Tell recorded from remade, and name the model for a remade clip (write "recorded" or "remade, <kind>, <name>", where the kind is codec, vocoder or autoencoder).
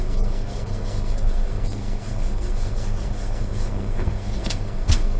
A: remade, codec, SNAC